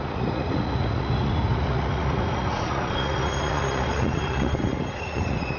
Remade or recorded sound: remade